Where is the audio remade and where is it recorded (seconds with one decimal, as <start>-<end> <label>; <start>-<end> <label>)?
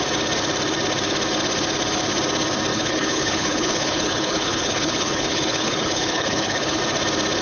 0.0-2.7 recorded; 2.7-6.8 remade; 6.8-7.4 recorded